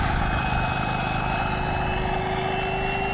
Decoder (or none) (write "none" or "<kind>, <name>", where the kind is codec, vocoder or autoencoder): none